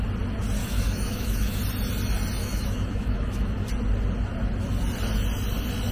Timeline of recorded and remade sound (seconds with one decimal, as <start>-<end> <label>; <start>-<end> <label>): 0.0-0.6 recorded; 0.6-1.6 remade; 1.6-2.4 recorded; 2.4-3.7 remade; 3.7-5.9 recorded